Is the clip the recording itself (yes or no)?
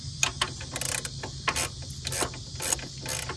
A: yes